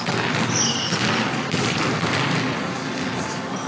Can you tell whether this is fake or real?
real